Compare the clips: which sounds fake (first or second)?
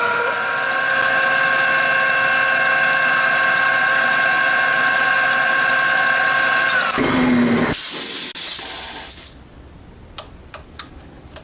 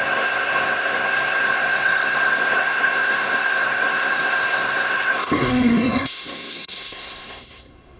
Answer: second